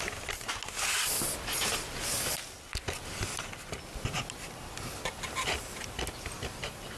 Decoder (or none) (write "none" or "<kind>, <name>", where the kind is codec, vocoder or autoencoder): none